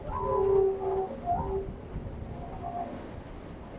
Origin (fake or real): real